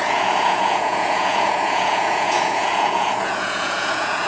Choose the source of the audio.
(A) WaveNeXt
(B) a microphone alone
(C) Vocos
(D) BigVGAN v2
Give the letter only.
C